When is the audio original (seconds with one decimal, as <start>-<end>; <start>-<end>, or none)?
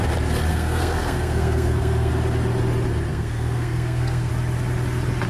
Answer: 0.0-0.5; 2.1-3.1; 4.3-5.3